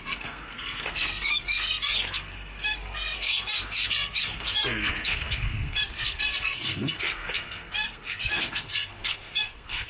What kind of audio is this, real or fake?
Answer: fake